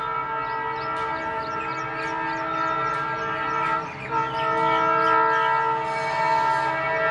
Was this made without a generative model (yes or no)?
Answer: yes